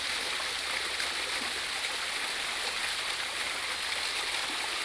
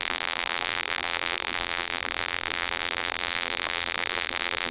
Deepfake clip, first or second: second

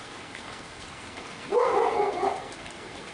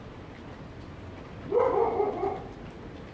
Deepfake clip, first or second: first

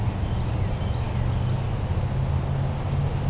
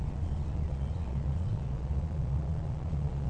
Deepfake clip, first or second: second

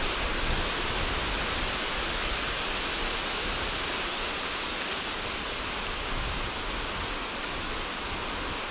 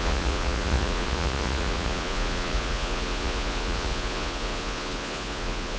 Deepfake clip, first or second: second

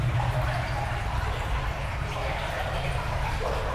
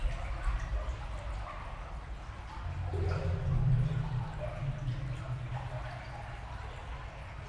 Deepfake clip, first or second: first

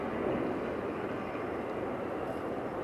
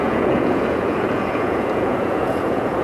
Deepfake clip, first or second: second